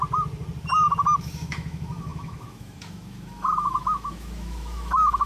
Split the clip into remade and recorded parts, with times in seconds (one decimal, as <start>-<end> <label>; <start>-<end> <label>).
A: 0.0-1.2 recorded; 1.2-5.3 remade